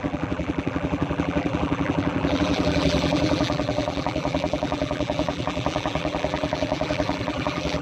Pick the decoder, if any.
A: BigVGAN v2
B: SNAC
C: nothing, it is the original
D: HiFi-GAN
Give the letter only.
A